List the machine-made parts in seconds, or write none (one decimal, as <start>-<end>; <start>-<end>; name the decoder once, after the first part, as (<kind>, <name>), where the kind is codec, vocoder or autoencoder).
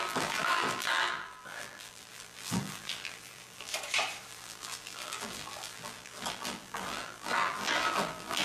0.0-3.7 (vocoder, BigVGAN v2); 4.3-8.4